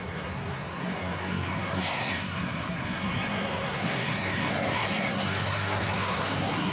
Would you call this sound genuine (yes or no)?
no